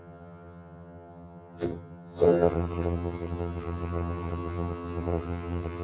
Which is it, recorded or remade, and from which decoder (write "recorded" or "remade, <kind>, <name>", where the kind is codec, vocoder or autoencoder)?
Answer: remade, vocoder, HiFi-GAN